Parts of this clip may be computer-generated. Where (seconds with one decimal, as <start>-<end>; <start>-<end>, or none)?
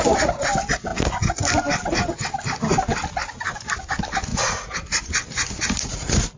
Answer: 4.3-5.1; 5.6-6.4